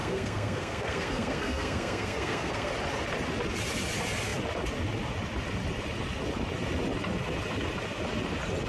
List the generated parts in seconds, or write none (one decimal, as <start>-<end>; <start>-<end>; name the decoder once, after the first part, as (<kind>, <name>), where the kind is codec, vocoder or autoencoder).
0.0-2.7 (codec, SNAC)